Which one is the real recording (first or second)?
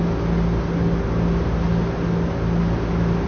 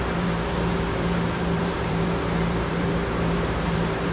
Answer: first